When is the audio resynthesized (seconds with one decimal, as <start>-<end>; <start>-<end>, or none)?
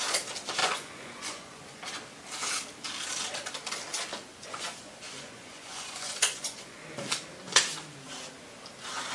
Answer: 0.6-1.8; 4.3-6.8